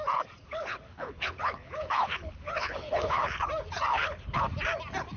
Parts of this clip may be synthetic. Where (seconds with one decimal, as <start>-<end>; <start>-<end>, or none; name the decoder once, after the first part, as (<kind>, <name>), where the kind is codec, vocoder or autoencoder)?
0.4-3.5 (codec, HILCodec); 3.9-4.4